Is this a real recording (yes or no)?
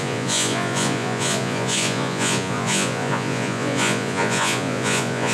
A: no